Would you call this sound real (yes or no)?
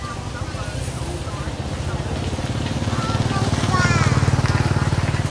yes